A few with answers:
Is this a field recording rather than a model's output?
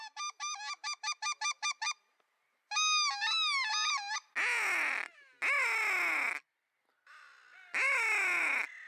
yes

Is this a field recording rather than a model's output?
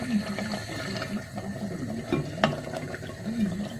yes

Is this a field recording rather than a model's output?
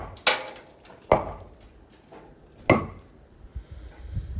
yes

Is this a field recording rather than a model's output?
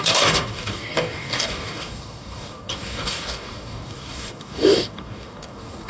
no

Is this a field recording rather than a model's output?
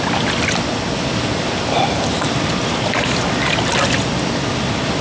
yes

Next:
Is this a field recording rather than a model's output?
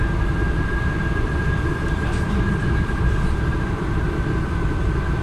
yes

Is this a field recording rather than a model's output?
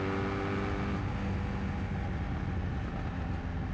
yes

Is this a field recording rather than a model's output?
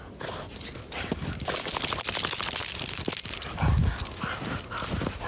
yes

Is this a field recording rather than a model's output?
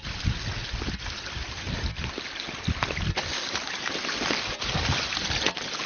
yes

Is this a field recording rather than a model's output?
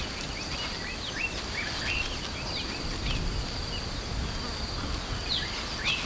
yes